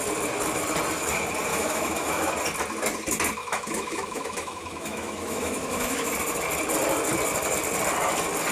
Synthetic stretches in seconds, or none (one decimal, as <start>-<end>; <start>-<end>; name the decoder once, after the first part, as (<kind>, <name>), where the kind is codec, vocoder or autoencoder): 1.5-2.3 (autoencoder, DAC-VAE); 3.4-6.1